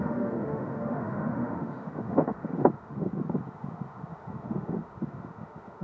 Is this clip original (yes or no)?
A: no